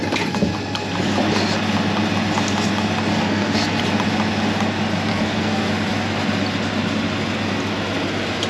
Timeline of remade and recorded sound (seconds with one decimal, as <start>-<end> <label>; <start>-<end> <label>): 0.0-3.1 recorded; 3.1-3.8 remade; 3.8-5.1 recorded; 5.1-5.7 remade; 5.7-8.5 recorded